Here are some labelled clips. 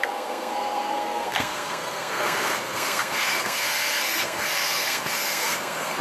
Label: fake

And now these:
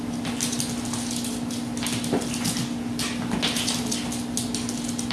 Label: real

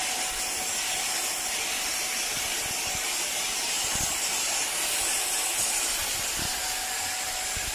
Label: real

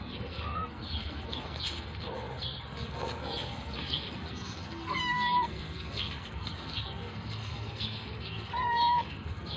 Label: fake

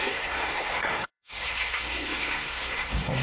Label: fake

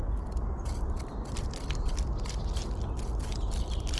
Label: real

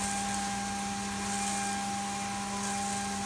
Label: real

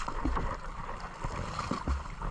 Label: real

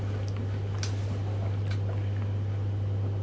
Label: real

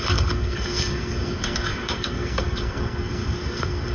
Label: fake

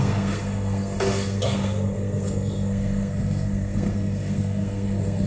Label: fake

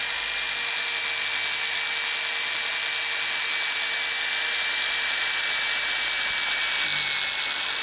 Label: real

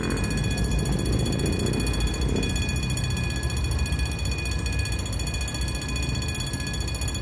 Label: real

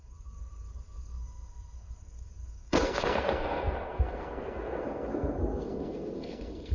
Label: fake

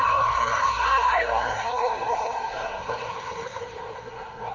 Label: fake